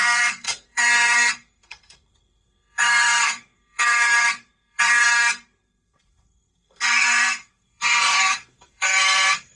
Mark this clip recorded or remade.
remade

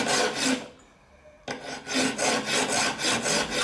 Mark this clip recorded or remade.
recorded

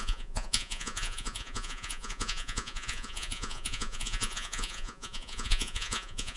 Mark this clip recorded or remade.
remade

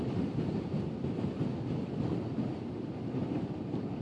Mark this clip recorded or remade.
recorded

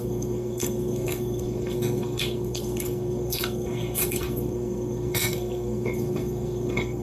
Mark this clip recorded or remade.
remade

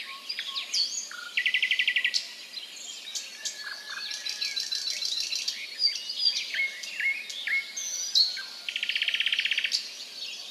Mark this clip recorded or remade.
recorded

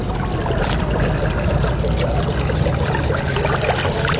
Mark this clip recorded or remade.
recorded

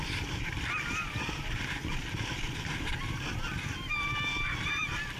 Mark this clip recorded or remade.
remade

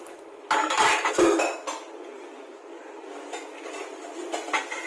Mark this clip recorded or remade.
recorded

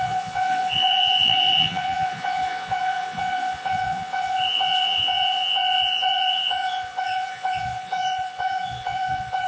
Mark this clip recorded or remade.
remade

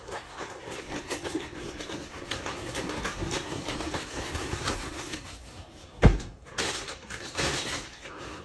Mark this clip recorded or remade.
remade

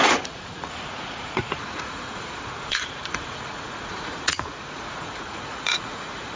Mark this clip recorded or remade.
remade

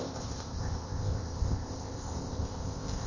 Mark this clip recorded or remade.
remade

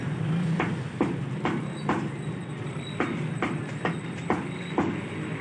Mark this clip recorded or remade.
recorded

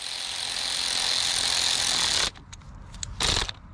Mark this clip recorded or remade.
recorded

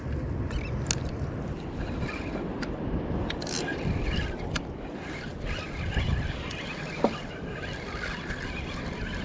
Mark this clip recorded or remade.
recorded